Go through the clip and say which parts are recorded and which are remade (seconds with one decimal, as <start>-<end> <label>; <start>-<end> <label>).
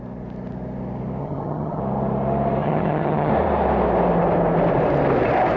0.0-1.2 recorded; 1.2-1.8 remade; 1.8-2.6 recorded; 2.6-3.3 remade; 3.3-5.6 recorded